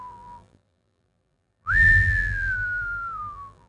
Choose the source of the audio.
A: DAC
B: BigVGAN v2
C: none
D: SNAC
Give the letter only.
B